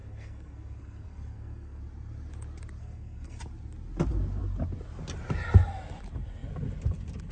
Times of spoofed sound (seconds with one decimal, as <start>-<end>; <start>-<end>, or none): 0.0-1.8; 2.8-3.4

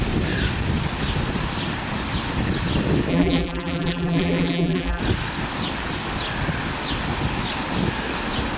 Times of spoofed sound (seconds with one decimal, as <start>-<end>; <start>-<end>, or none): 3.1-5.0

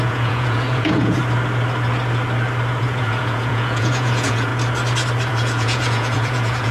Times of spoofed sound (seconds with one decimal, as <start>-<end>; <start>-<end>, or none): 0.0-1.2; 2.8-4.5; 5.3-6.7

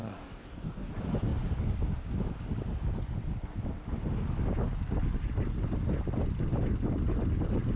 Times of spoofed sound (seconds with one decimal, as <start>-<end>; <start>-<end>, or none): 0.0-0.9

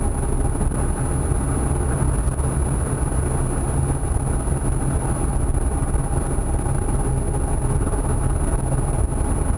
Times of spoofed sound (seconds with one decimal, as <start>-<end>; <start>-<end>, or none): none

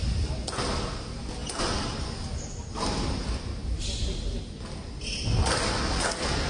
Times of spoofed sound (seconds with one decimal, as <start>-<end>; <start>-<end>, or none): none